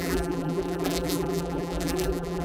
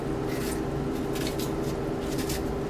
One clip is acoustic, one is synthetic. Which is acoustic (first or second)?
second